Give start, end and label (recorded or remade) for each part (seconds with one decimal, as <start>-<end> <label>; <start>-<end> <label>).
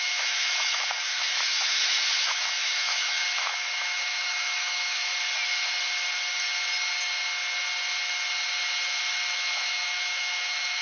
0.0-5.1 remade; 5.1-9.3 recorded; 9.3-10.8 remade